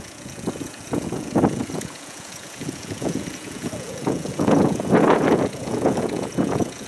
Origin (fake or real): fake